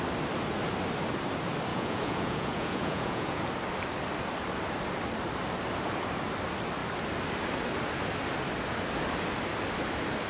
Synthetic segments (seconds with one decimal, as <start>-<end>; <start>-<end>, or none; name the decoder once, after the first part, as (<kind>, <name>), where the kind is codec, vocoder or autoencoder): 1.7-3.4 (vocoder, Vocos)